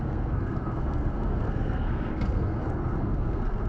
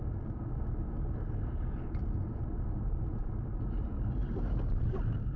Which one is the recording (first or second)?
second